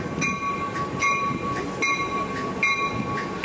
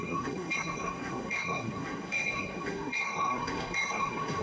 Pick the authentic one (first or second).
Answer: first